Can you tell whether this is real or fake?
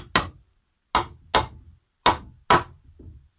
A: real